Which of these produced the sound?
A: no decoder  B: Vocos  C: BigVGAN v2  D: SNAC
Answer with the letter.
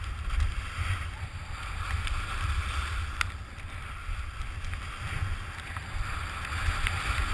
A